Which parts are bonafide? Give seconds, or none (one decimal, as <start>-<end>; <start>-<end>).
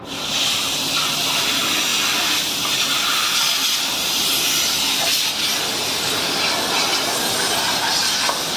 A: 0.0-8.6